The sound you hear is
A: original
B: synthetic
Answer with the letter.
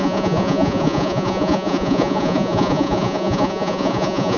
B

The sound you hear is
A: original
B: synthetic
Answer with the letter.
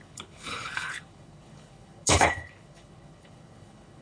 B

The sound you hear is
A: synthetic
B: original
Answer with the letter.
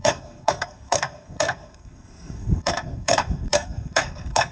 A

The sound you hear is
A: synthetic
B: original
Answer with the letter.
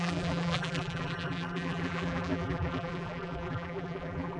A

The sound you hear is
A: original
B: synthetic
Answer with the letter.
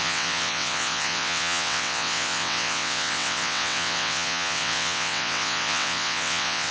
B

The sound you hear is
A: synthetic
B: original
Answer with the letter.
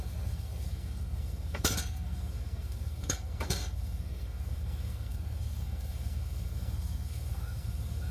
A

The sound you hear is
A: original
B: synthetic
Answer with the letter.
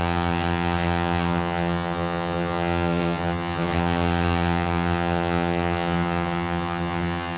B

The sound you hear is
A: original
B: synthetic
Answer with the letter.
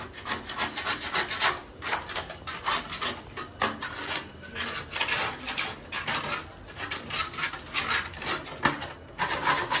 A